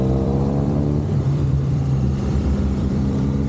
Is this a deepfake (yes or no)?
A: yes